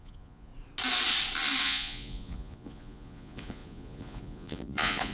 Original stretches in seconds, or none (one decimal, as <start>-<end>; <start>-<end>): 0.5-1.6